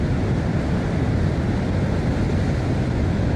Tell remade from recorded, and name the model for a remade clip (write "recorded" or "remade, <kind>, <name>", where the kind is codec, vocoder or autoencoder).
recorded